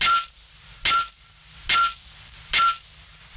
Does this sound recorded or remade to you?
recorded